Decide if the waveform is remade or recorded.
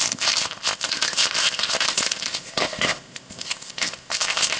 remade